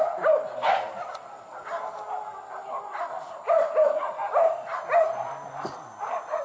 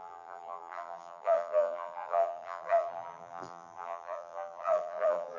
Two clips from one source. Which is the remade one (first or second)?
second